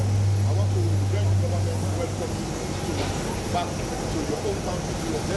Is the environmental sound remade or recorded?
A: recorded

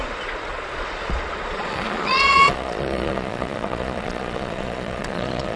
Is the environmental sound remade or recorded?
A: remade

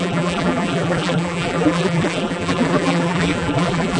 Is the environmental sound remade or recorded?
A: remade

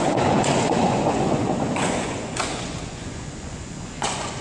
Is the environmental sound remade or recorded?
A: remade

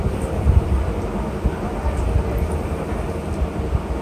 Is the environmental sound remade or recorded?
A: recorded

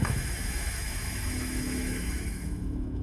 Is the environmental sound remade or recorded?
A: remade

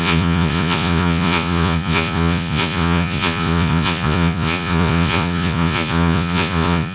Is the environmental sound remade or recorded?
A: remade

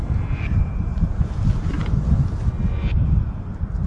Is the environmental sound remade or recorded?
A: recorded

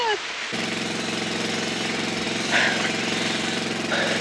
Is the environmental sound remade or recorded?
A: remade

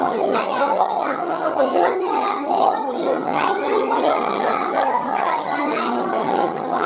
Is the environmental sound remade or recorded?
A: remade